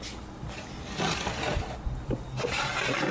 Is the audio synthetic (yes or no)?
no